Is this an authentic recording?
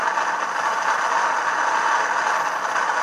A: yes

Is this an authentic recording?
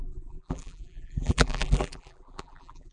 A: no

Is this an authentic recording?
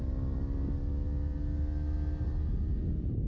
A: yes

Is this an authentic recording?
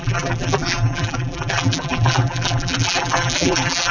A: no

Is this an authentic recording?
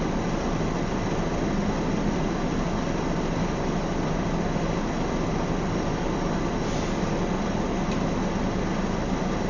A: yes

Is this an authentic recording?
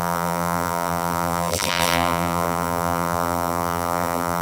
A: no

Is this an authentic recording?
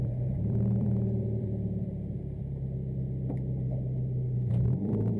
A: no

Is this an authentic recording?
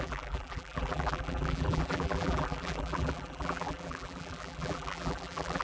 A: no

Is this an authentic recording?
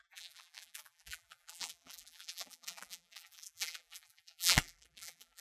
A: no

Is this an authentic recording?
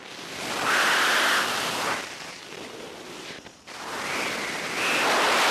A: no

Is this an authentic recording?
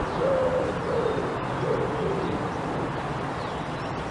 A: no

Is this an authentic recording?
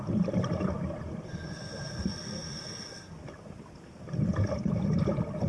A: yes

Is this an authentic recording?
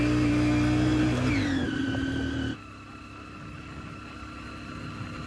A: yes